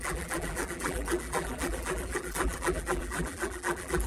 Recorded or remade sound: remade